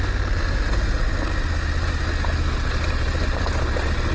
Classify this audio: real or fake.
real